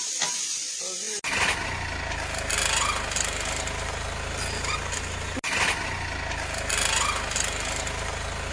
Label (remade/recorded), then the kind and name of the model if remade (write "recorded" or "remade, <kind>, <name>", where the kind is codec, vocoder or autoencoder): recorded